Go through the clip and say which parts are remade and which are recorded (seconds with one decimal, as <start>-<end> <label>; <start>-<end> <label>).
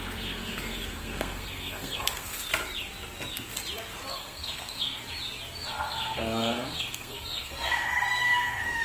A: 0.0-2.5 remade; 2.5-4.1 recorded; 4.1-5.0 remade; 5.0-5.7 recorded; 5.7-8.8 remade